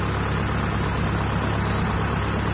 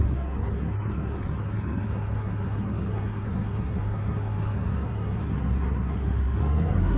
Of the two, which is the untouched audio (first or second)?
first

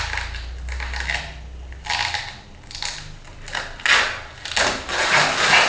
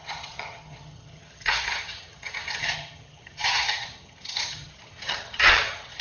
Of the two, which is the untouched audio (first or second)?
first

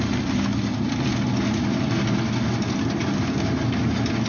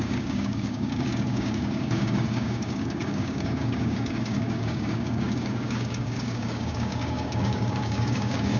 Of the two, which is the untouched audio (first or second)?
first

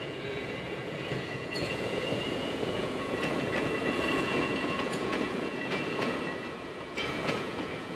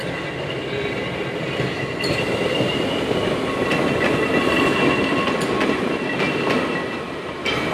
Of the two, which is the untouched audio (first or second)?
second